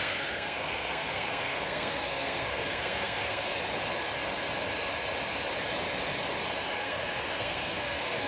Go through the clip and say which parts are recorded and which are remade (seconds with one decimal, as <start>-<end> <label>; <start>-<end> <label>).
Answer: 0.0-3.5 remade; 3.5-6.8 recorded; 6.8-8.3 remade